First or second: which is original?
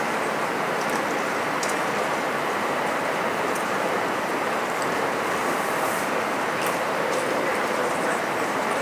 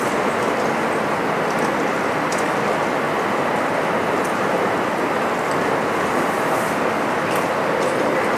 second